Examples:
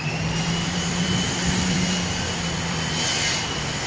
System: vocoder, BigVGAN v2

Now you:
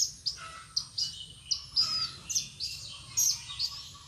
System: none